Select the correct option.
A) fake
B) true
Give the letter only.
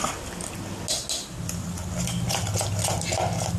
B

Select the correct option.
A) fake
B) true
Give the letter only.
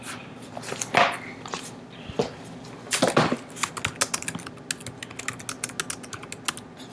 B